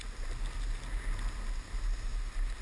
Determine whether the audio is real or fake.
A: real